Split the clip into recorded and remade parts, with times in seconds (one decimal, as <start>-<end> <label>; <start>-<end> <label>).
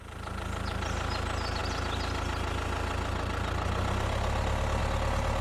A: 0.0-5.4 recorded